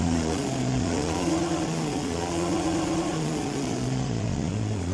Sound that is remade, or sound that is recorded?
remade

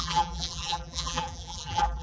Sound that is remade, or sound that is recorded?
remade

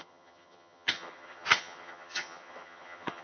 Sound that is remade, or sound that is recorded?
remade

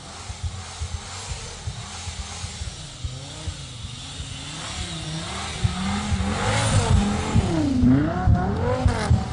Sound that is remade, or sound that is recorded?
recorded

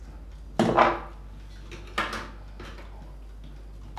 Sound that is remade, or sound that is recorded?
recorded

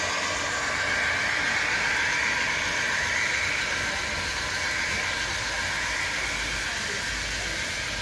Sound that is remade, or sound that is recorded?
recorded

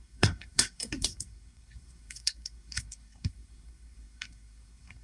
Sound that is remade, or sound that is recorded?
remade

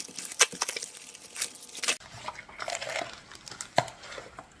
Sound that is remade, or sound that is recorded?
recorded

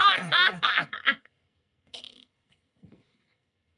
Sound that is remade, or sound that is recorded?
remade